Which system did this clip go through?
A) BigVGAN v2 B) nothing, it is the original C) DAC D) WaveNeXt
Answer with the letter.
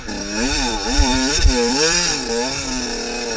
A